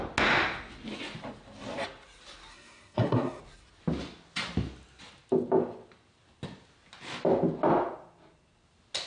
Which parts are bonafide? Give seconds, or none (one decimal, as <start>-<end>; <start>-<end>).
0.0-2.5; 3.4-9.1